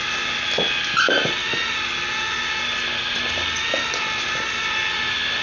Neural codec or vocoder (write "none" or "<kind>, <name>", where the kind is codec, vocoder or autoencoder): none